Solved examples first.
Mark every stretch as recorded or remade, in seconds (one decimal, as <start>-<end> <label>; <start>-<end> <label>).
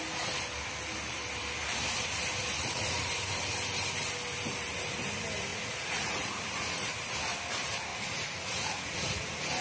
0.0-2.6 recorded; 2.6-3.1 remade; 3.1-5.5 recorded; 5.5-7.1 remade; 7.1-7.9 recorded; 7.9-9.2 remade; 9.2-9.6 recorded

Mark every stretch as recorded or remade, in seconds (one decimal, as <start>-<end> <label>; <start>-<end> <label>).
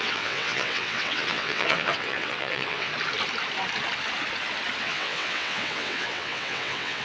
0.0-2.9 remade; 2.9-4.8 recorded; 4.8-7.0 remade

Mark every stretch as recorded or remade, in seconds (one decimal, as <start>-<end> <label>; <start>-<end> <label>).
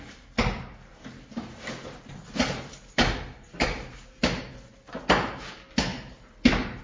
0.0-6.8 recorded